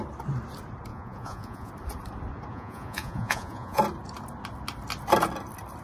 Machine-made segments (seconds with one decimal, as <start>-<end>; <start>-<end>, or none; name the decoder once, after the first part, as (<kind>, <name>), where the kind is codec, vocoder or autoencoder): 0.9-1.7 (vocoder, Vocos); 2.5-3.8